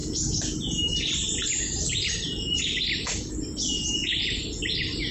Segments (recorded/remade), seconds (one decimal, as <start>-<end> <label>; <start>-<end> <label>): 0.0-5.1 recorded